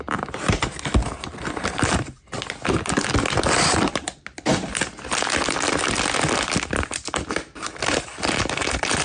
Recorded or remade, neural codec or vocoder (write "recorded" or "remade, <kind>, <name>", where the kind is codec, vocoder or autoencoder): recorded